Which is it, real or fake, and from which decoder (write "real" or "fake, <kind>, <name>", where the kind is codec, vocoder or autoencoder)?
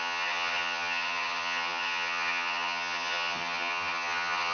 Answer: fake, vocoder, HiFi-GAN